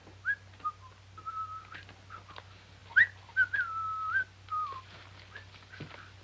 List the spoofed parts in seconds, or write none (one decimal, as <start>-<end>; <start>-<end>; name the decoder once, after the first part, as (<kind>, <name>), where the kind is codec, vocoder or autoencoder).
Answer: none